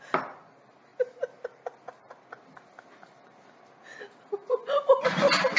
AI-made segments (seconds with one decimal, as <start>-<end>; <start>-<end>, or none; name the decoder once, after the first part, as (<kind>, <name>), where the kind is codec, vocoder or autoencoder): none